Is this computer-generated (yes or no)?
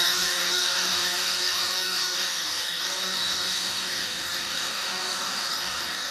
yes